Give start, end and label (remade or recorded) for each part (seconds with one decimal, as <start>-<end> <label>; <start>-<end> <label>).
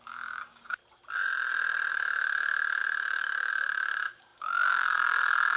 0.0-0.8 remade; 0.8-1.9 recorded; 1.9-5.6 remade